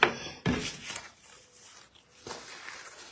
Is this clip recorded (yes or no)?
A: yes